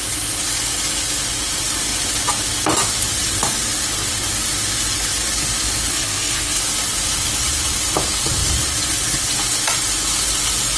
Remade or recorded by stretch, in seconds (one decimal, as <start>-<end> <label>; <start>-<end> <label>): 0.0-5.9 recorded; 5.9-6.6 remade; 6.6-10.8 recorded